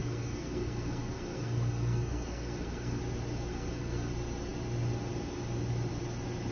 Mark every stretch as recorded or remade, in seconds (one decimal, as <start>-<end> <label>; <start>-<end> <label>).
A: 0.0-3.0 remade; 3.0-3.5 recorded; 3.5-4.1 remade; 4.1-6.5 recorded